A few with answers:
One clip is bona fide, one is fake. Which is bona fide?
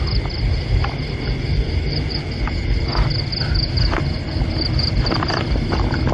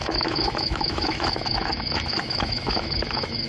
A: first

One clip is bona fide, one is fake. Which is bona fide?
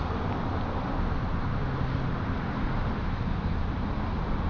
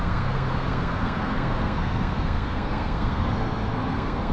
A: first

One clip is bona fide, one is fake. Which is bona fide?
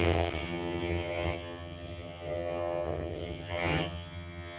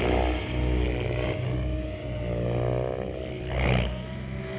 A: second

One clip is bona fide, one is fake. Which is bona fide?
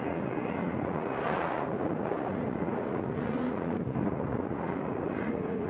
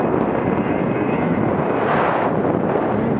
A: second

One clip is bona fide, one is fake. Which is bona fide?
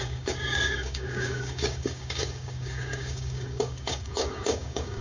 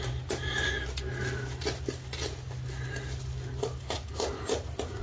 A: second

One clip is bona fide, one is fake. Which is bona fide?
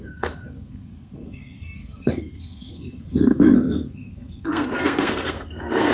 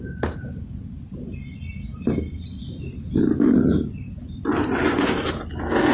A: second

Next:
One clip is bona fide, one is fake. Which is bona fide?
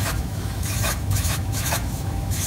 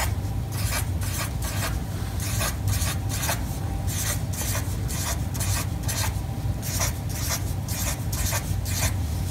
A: second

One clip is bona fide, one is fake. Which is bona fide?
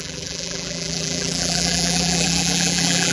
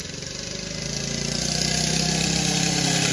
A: second